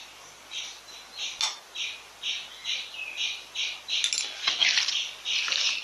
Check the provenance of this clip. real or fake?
real